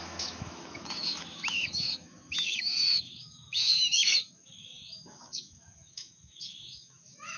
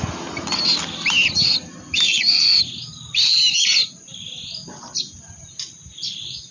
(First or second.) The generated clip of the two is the first